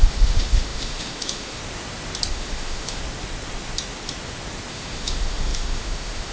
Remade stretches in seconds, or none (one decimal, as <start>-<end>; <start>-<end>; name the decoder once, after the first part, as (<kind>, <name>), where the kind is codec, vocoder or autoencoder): 0.0-1.6 (autoencoder, DAC-VAE); 2.3-3.0; 4.7-6.3